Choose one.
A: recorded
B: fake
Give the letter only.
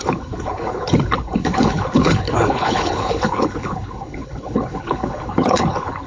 B